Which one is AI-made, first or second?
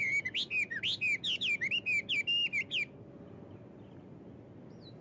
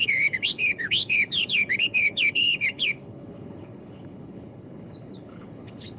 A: second